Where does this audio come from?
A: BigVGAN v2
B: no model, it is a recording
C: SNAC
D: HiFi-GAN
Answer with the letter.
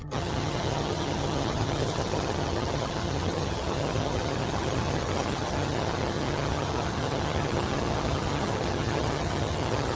D